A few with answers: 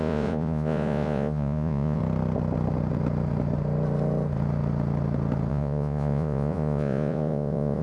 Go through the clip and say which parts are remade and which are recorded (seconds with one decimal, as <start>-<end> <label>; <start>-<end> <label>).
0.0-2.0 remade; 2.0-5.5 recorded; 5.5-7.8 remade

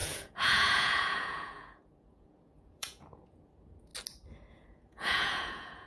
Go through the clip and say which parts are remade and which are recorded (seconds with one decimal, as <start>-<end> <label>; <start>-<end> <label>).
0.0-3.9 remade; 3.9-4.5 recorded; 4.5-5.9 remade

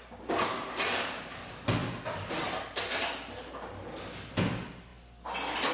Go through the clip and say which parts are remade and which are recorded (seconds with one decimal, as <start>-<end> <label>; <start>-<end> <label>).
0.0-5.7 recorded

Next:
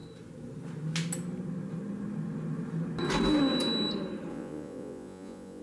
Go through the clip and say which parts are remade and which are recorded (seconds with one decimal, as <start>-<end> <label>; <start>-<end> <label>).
0.0-4.3 recorded; 4.3-5.6 remade

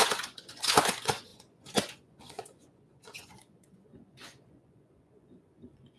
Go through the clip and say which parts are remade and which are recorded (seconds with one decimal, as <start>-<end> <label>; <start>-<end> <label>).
0.0-6.0 remade

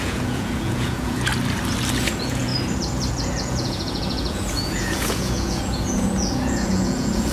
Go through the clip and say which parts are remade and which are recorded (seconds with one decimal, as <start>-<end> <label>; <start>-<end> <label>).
0.0-1.3 remade; 1.3-2.0 recorded; 2.0-2.5 remade; 2.5-3.1 recorded; 3.1-7.3 remade

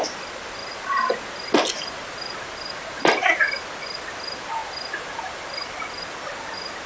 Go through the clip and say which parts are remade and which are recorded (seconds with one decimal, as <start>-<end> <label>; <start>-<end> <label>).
0.0-6.9 recorded